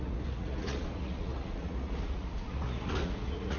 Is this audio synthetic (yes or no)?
yes